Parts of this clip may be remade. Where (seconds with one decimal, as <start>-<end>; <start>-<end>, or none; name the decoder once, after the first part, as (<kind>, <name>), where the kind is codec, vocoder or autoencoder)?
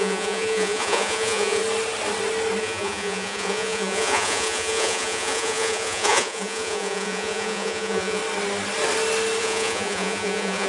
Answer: 0.0-1.6 (vocoder, Vocos); 2.6-8.2; 9.4-10.7